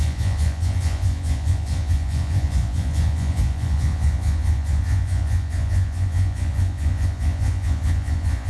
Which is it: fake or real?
fake